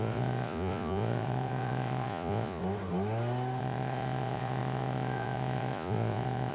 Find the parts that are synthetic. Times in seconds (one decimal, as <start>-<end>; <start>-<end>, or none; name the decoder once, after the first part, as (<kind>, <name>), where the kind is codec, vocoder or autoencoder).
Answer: 0.0-2.6 (vocoder, Vocos); 3.6-6.5